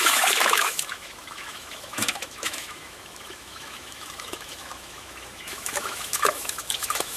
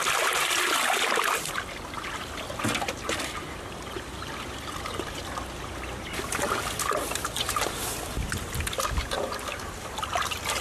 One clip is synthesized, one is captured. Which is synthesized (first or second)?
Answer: first